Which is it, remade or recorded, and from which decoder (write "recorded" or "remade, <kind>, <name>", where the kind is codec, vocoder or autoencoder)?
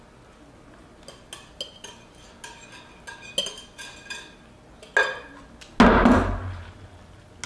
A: recorded